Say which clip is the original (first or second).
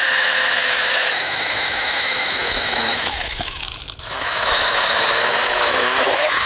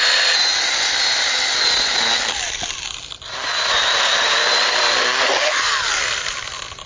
second